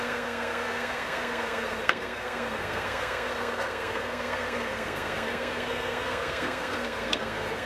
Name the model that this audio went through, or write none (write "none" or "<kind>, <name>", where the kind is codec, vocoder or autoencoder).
codec, SNAC